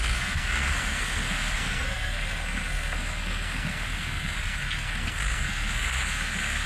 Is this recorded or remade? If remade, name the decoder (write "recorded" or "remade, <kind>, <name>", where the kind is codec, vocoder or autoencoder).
remade, codec, SNAC